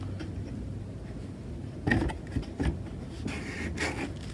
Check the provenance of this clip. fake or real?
real